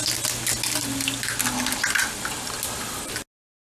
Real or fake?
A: real